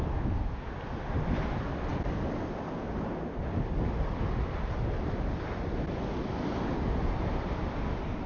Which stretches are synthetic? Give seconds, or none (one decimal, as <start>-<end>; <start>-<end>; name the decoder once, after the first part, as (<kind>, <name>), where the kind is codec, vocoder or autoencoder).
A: none